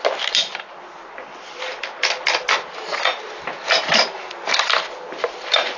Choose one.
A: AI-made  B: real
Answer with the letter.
B